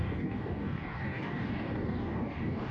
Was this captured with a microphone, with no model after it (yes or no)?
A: no